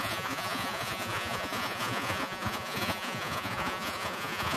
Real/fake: fake